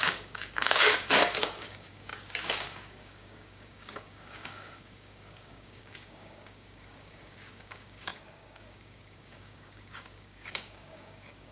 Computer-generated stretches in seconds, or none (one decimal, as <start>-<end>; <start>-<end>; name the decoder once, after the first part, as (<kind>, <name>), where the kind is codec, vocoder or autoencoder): 0.0-11.5 (codec, DAC)